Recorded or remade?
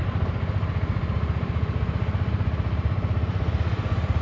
recorded